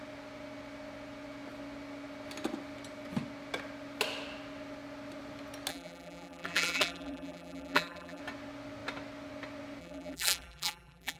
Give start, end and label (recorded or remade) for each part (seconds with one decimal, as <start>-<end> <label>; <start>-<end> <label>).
0.0-5.7 recorded; 5.7-8.2 remade; 8.2-9.8 recorded; 9.8-11.2 remade